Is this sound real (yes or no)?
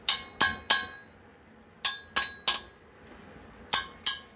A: yes